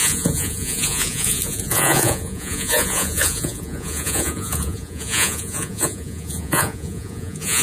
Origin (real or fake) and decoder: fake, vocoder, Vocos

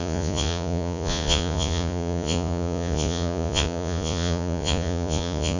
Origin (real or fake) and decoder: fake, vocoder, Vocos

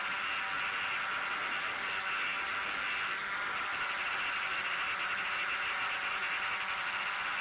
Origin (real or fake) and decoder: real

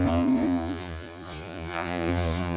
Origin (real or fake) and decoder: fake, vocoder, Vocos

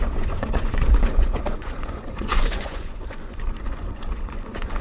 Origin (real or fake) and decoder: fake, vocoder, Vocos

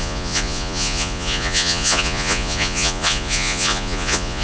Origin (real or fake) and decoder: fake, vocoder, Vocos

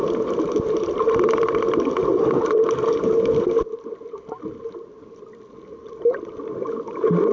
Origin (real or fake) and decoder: real